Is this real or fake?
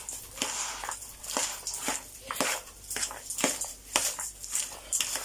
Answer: fake